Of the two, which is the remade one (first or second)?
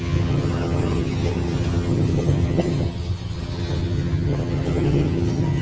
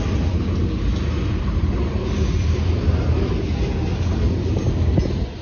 first